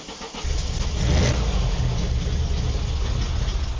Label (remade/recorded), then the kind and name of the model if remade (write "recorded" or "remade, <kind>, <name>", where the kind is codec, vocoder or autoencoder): recorded